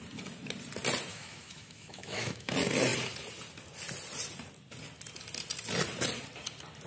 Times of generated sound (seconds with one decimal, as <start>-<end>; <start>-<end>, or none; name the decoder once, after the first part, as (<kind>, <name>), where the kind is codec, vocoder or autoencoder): 1.1-2.5 (autoencoder, DAC-VAE)